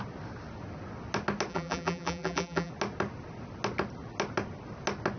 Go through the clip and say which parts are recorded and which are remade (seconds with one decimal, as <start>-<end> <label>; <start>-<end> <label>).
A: 0.0-1.5 recorded; 1.5-2.7 remade; 2.7-5.2 recorded